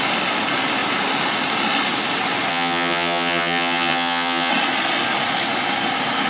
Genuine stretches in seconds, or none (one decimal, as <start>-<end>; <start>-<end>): 0.0-2.5; 4.5-6.3